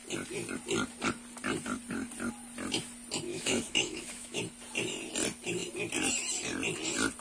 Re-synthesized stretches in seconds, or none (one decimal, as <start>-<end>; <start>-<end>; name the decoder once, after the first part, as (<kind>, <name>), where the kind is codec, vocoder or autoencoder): 3.3-4.4 (autoencoder, DAC-VAE)